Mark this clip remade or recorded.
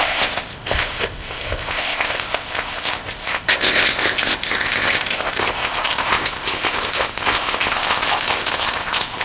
remade